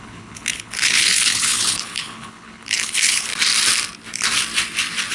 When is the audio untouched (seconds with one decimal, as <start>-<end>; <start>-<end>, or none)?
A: 3.3-5.1